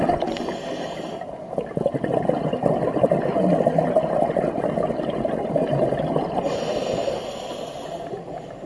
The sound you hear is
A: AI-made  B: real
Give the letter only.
B